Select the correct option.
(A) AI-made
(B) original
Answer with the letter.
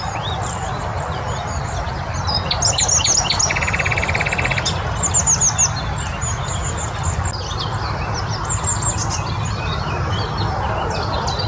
B